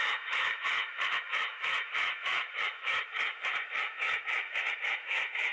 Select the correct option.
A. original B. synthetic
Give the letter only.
B